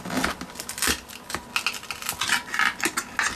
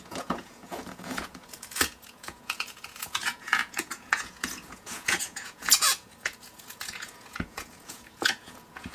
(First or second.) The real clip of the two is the first